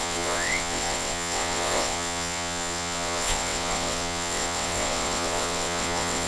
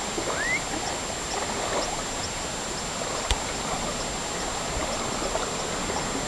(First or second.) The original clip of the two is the second